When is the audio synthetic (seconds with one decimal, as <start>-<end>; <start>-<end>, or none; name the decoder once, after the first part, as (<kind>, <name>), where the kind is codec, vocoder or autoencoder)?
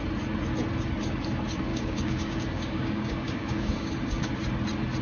1.7-4.3 (codec, DAC)